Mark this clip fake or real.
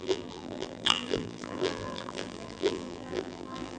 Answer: fake